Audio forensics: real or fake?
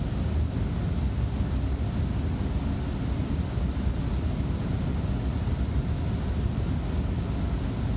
real